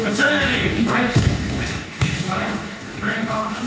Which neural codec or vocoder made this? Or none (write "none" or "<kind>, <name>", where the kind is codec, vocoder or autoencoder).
codec, DAC